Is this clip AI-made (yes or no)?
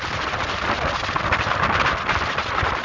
no